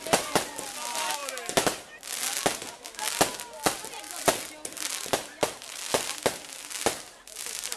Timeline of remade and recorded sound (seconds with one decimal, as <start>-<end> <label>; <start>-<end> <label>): 0.0-7.8 recorded